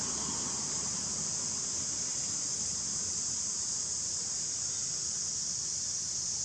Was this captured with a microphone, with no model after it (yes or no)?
yes